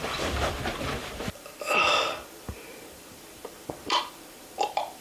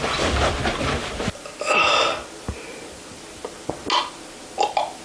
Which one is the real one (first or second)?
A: second